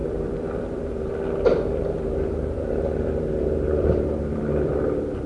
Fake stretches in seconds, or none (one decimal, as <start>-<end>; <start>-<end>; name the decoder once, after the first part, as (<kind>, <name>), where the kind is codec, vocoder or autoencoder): 0.0-1.1 (vocoder, BigVGAN v2); 1.5-4.7